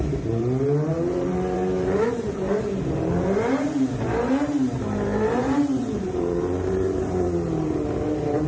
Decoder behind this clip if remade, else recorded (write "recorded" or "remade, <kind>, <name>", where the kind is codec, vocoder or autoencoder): remade, vocoder, BigVGAN v2